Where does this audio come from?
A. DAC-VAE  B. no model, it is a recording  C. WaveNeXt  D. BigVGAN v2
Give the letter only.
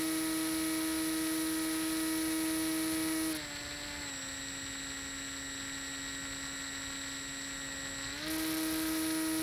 B